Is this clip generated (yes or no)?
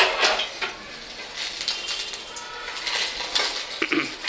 no